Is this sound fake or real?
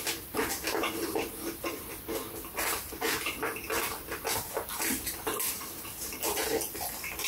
real